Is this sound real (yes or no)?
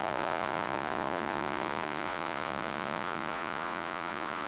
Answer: no